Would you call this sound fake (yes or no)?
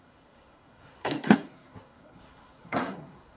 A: yes